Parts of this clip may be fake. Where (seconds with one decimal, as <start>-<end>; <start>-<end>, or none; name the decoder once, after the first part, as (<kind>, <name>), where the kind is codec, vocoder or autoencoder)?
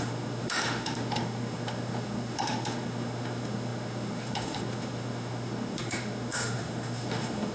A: 0.0-7.5 (autoencoder, DAC-VAE)